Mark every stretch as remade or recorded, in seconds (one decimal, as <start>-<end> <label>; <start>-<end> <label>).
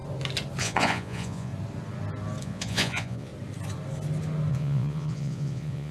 0.0-0.6 recorded; 0.6-1.5 remade; 1.5-2.4 recorded; 2.4-3.3 remade; 3.3-4.5 recorded; 4.5-5.9 remade